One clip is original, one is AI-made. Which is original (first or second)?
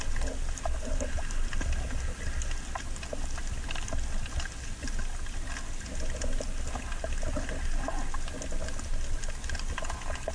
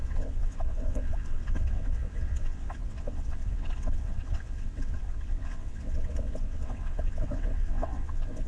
first